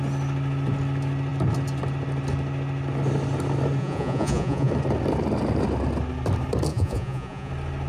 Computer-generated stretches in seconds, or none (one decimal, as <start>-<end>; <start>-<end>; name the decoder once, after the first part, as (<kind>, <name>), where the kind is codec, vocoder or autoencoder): 3.8-4.7 (vocoder, Vocos); 6.7-7.5